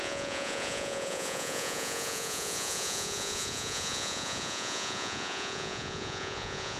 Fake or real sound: fake